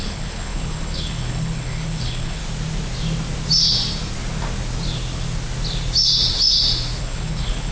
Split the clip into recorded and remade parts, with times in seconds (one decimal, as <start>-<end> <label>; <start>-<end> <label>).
0.0-2.4 remade; 2.4-7.0 recorded; 7.0-7.7 remade